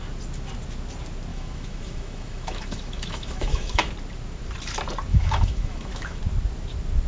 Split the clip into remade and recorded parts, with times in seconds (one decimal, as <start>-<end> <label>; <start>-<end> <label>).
0.0-1.3 recorded; 1.3-3.9 remade; 3.9-5.1 recorded; 5.1-6.2 remade; 6.2-7.1 recorded